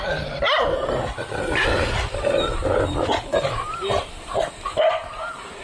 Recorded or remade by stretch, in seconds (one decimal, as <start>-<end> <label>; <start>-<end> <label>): 0.0-5.6 recorded

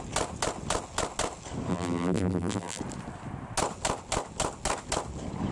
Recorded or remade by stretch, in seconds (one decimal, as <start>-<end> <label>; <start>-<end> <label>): 0.0-1.7 recorded; 1.7-2.8 remade; 2.8-5.5 recorded

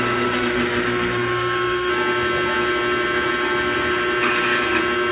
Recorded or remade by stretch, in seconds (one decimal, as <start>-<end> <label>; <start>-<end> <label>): 0.0-1.9 remade; 1.9-5.1 recorded

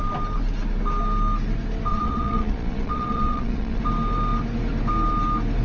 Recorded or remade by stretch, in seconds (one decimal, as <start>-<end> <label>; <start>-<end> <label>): 0.0-1.9 recorded; 1.9-3.8 remade; 3.8-5.6 recorded